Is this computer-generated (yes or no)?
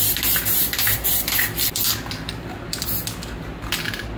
no